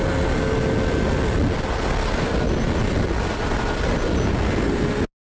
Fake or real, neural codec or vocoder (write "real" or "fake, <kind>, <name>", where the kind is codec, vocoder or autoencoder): real